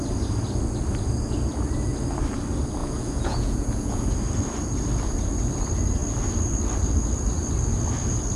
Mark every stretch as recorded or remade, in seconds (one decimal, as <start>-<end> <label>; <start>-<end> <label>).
0.0-2.8 recorded; 2.8-4.1 remade; 4.1-8.4 recorded